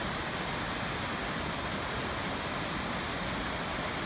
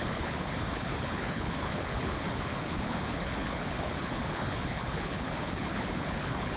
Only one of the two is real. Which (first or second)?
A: first